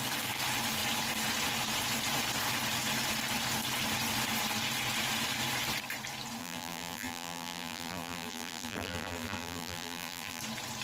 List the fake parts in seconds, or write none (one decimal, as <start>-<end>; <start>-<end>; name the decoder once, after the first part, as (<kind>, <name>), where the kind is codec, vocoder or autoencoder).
6.4-10.4 (vocoder, BigVGAN v2)